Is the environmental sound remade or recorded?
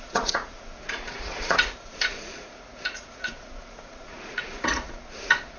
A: remade